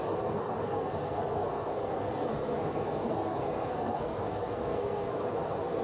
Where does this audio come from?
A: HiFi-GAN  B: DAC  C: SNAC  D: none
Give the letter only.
C